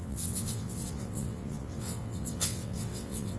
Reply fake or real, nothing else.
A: fake